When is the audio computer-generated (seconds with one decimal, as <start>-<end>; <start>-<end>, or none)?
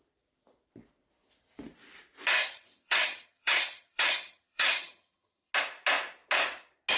2.4-5.5